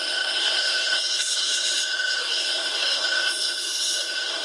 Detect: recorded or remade remade